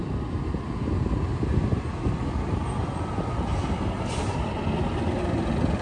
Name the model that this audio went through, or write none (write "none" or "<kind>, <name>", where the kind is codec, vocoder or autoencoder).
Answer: none